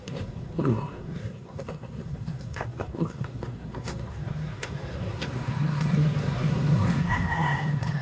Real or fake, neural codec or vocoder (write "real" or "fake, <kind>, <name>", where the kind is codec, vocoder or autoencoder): fake, codec, SNAC